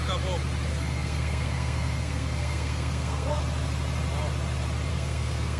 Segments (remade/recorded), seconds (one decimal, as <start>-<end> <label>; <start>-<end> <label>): 0.0-0.7 recorded; 0.7-3.4 remade; 3.4-4.9 recorded; 4.9-5.6 remade